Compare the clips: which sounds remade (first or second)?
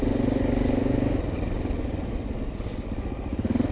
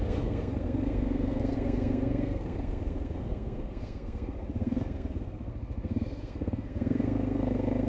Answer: second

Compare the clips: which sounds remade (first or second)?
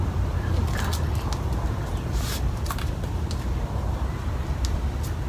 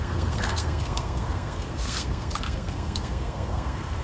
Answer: second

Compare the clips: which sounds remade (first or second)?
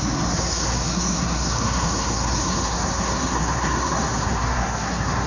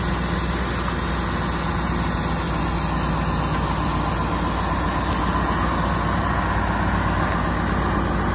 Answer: first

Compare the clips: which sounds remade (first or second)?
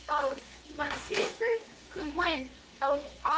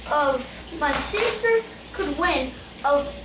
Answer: first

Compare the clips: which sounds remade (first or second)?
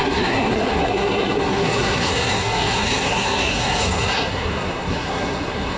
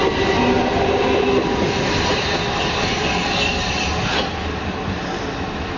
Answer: first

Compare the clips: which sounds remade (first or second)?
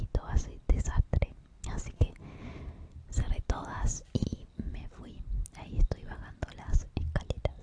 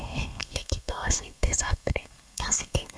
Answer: second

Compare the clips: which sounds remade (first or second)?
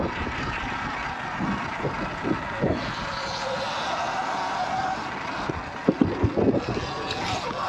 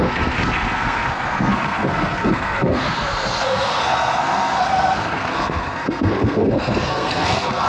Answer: second